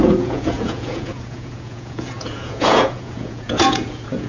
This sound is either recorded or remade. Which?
remade